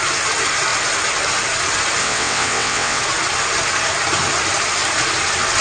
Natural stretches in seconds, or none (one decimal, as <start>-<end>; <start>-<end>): 0.0-2.0; 3.0-5.6